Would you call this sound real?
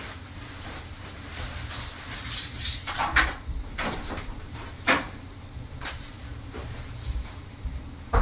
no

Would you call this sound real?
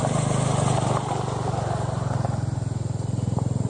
yes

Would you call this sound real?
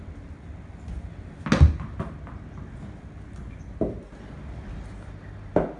yes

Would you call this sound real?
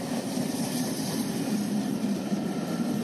yes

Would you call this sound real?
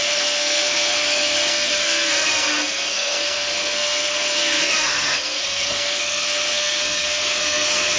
no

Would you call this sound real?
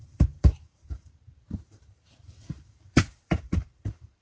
no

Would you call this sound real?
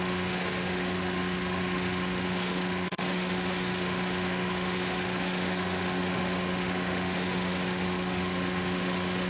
no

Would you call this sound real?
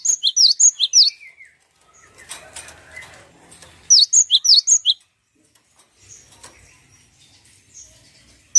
yes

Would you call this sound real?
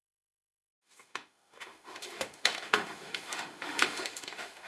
no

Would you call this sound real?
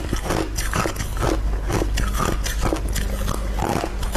yes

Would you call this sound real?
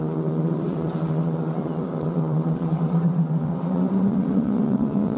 no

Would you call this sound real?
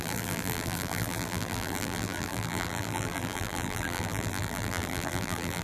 no